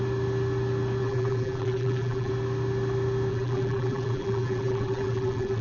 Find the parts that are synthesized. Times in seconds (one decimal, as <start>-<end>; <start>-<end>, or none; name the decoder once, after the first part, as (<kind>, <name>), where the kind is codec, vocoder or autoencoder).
1.0-2.3 (vocoder, BigVGAN v2); 3.3-5.6